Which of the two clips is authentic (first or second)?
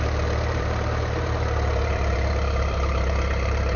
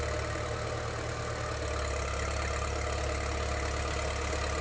second